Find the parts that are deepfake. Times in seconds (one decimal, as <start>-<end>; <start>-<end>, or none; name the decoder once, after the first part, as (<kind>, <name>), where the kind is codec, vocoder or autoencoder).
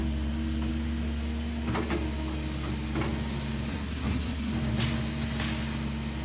3.7-4.5 (codec, SNAC)